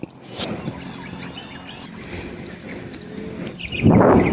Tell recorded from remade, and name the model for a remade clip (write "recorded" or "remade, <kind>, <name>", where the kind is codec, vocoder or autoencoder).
remade, vocoder, BigVGAN v2